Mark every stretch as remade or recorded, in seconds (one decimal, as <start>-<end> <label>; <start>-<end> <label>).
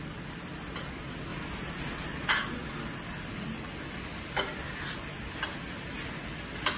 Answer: 0.0-6.8 recorded